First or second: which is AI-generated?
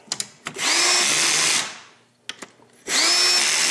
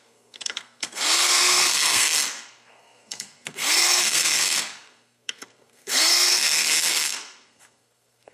second